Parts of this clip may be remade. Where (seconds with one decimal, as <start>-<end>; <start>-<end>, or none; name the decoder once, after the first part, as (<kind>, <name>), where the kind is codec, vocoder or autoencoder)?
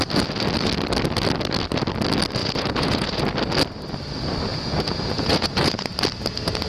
2.4-3.2 (vocoder, Vocos); 4.5-5.9